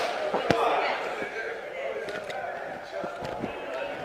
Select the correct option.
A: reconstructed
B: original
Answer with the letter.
B